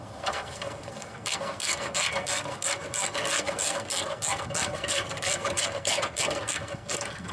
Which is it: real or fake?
fake